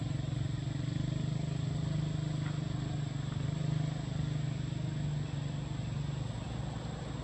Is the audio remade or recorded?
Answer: recorded